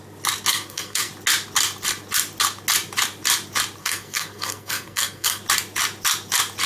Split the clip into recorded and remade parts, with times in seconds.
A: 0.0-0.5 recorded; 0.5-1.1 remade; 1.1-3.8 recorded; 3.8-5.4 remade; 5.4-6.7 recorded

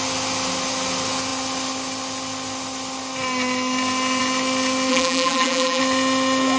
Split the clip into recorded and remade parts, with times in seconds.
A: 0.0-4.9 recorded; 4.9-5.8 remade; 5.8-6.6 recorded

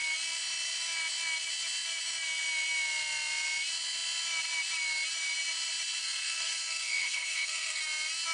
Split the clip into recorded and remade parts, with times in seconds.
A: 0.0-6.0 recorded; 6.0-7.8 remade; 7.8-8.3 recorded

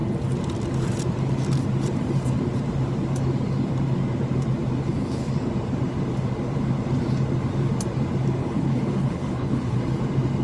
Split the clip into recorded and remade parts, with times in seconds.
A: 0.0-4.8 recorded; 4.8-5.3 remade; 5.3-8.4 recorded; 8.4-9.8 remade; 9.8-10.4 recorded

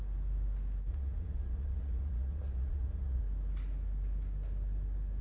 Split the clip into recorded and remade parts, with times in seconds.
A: 0.0-0.9 recorded; 0.9-3.2 remade; 3.2-5.2 recorded

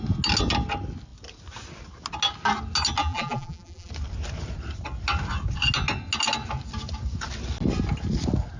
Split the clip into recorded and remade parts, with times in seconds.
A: 0.0-3.0 recorded; 3.0-3.9 remade; 3.9-8.6 recorded

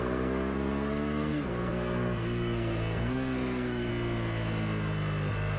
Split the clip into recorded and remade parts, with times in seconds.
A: 0.0-3.9 remade; 3.9-5.6 recorded

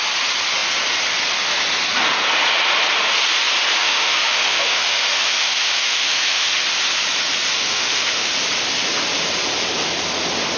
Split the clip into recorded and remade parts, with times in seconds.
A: 0.0-3.8 recorded; 3.8-6.6 remade; 6.6-7.5 recorded; 7.5-8.3 remade; 8.3-10.6 recorded